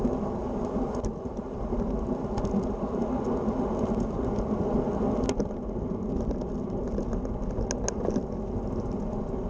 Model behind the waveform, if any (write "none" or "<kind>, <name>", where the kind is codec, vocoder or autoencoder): none